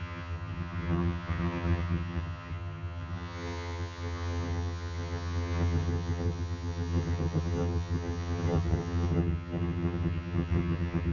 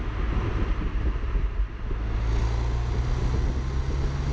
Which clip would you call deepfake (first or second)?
first